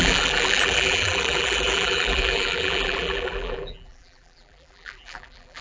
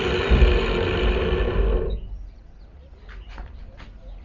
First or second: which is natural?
second